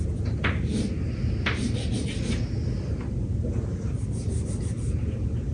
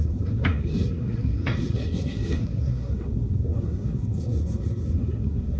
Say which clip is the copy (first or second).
second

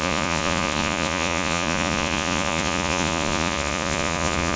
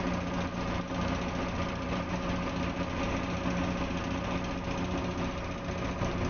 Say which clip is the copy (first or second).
first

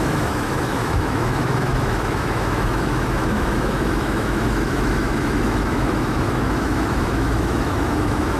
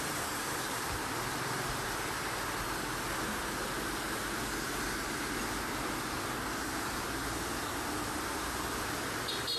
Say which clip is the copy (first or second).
first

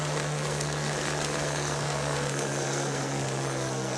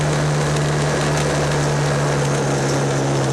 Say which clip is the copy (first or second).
first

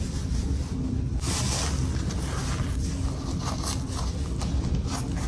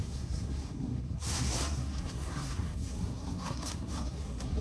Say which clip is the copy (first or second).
second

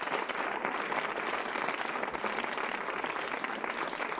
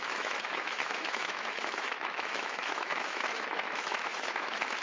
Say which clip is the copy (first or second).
second